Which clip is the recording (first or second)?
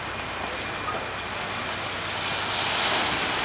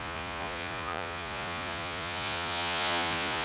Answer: first